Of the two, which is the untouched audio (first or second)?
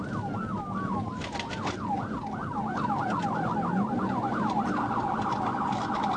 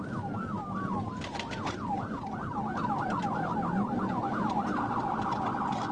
first